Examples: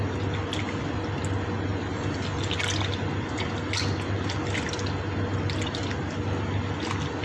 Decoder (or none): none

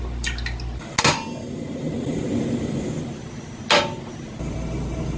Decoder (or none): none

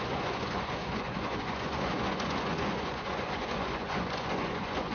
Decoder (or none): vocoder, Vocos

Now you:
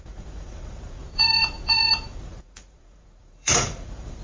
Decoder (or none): vocoder, Vocos